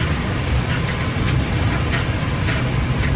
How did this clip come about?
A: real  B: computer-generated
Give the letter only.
A